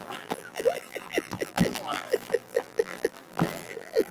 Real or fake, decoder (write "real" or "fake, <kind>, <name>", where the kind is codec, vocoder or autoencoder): fake, vocoder, BigVGAN v2